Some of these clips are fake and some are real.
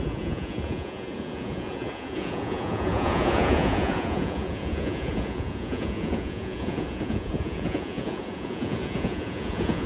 fake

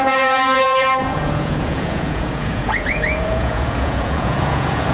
fake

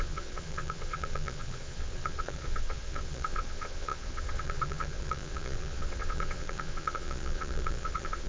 fake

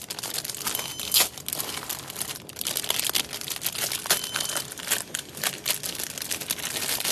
real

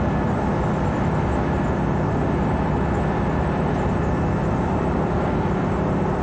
real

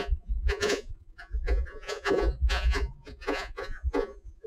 fake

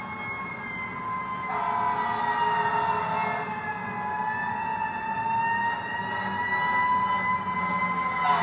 real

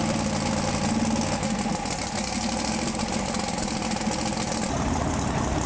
real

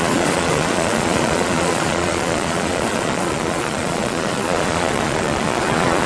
fake